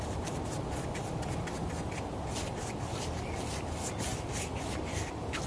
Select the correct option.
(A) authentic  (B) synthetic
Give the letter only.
A